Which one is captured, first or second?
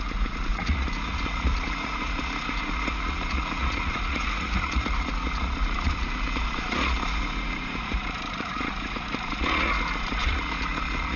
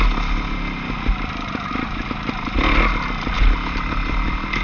second